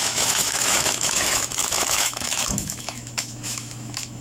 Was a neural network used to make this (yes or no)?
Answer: yes